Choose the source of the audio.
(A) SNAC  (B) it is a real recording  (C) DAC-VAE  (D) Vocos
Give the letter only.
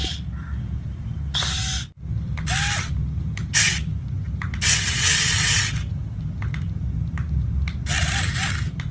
B